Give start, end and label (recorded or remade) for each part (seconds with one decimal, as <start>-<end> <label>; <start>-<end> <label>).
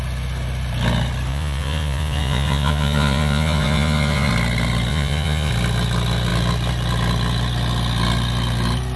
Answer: 0.0-1.3 recorded; 1.3-4.3 remade; 4.3-4.9 recorded; 4.9-5.5 remade; 5.5-9.0 recorded